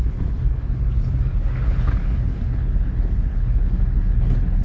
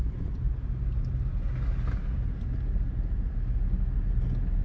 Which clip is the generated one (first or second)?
first